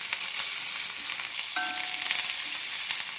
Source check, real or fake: real